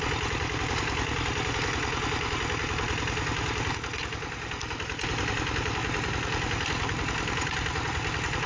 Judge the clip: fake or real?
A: real